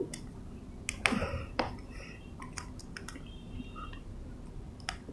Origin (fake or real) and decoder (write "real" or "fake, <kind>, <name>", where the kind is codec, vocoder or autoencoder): real